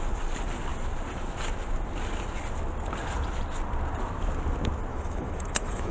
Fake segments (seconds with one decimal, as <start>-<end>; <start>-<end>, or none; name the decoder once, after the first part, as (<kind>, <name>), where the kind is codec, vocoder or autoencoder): 4.9-5.9 (autoencoder, DAC-VAE)

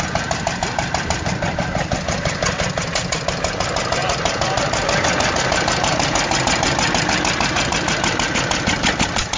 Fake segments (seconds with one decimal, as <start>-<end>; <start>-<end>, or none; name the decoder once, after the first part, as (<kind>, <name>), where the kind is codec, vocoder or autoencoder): none

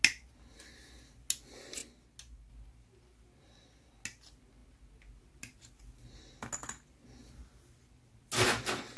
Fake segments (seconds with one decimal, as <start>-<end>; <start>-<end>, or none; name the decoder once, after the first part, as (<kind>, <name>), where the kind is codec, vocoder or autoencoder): none

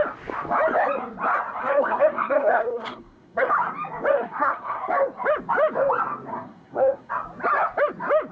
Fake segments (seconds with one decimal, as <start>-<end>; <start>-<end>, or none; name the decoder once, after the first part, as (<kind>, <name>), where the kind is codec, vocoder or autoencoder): 1.6-3.5 (codec, SNAC); 4.1-4.8; 6.3-7.1

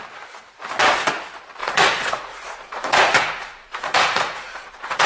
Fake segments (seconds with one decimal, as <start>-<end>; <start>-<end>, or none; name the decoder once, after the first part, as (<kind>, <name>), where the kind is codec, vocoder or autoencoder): 1.6-5.1 (vocoder, Vocos)

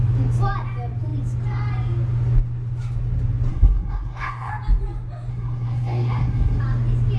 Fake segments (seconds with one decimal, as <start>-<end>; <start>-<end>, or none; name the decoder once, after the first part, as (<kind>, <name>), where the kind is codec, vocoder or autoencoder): 3.5-4.5 (codec, SNAC); 5.3-6.6

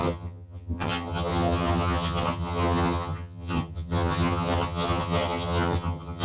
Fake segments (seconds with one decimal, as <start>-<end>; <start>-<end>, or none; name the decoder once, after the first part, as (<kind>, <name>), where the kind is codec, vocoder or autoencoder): 0.0-6.2 (vocoder, HiFi-GAN)